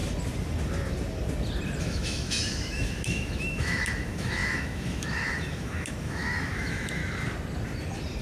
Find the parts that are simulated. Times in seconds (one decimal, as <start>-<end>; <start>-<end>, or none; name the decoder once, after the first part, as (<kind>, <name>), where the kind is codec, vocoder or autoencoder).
1.8-7.0 (autoencoder, DAC-VAE)